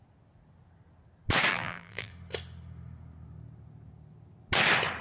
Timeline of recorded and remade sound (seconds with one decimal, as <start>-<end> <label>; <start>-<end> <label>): 0.0-1.5 recorded; 1.5-2.1 remade; 2.1-5.0 recorded